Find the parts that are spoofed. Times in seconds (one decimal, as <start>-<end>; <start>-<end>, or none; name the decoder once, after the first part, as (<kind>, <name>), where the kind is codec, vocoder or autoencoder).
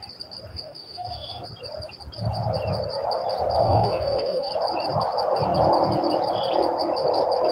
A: 0.5-1.4 (codec, DAC); 3.6-4.5